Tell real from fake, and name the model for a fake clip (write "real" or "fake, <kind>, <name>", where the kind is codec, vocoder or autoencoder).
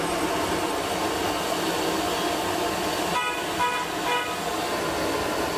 real